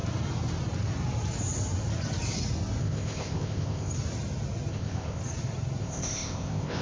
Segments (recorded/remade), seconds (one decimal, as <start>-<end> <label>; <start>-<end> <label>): 0.0-2.8 recorded; 2.8-3.9 remade; 3.9-4.7 recorded; 4.7-5.2 remade; 5.2-5.8 recorded; 5.8-6.8 remade